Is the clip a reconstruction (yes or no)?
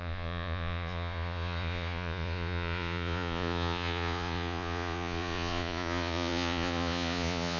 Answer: yes